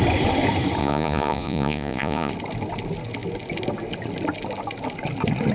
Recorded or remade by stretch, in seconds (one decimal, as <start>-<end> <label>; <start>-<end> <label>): 0.0-0.8 recorded; 0.8-2.3 remade; 2.3-5.5 recorded